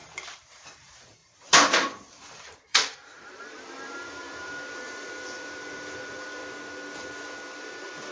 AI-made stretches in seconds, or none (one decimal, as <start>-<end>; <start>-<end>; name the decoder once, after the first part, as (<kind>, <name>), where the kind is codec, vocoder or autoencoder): 0.0-6.4 (vocoder, BigVGAN v2); 7.6-8.1